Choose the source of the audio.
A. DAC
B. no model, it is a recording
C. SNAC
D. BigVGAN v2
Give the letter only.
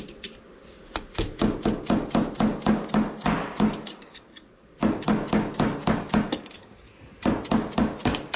B